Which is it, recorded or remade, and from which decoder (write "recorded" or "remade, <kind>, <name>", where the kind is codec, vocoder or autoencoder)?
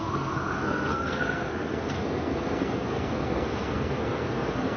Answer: remade, codec, SNAC